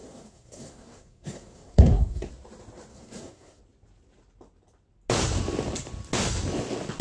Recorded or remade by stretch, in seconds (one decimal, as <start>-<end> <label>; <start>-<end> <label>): 0.0-2.3 remade; 2.3-2.9 recorded; 2.9-3.6 remade; 3.6-7.0 recorded